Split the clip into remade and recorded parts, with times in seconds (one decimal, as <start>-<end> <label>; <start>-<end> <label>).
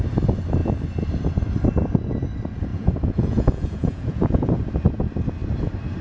0.0-2.7 recorded; 2.7-4.6 remade; 4.6-6.0 recorded